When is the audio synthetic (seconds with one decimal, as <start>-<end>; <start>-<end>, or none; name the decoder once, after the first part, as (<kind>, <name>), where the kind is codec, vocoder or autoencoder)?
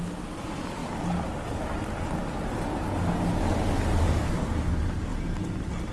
none